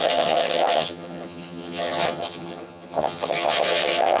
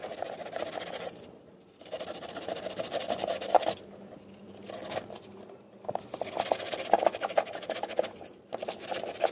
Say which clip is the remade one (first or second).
first